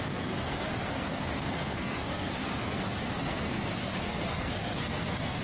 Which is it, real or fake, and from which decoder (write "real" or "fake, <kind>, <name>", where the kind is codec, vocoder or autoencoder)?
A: fake, codec, SNAC